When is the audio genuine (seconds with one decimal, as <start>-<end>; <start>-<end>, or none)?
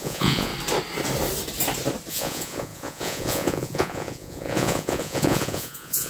0.5-2.1